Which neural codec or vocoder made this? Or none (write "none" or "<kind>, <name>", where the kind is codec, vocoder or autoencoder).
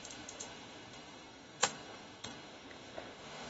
autoencoder, DAC-VAE